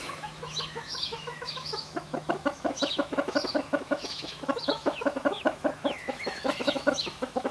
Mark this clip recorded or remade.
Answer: remade